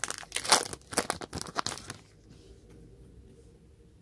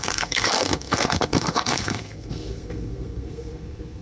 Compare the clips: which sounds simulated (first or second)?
second